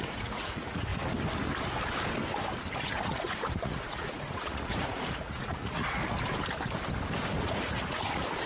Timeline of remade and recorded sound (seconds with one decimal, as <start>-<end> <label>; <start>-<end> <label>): 0.0-0.9 remade; 0.9-2.8 recorded; 2.8-6.0 remade; 6.0-7.4 recorded; 7.4-8.5 remade